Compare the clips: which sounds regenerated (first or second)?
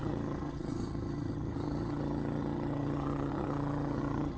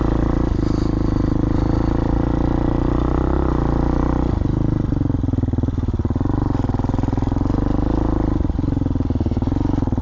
first